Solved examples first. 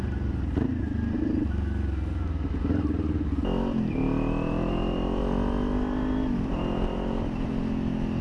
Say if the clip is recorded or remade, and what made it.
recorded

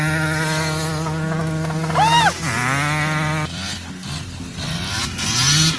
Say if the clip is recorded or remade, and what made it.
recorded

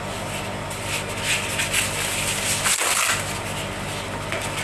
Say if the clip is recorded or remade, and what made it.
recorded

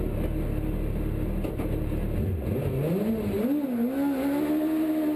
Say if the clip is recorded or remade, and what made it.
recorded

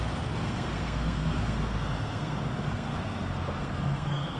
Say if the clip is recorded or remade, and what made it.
remade, codec, SNAC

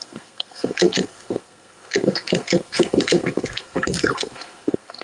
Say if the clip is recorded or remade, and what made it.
remade, codec, SNAC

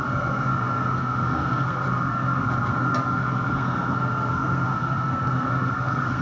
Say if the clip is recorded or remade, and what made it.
remade, codec, SNAC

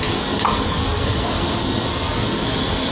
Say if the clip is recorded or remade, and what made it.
remade, codec, SNAC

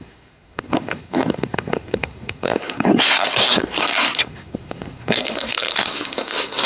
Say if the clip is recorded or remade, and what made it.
remade, codec, SNAC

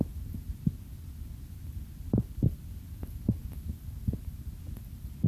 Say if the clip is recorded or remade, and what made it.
recorded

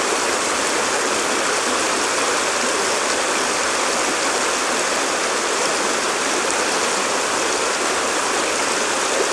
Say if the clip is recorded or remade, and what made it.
recorded